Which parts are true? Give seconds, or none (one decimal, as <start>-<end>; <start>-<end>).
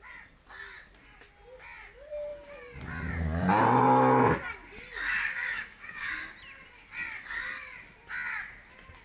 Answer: 0.0-5.3; 6.2-9.0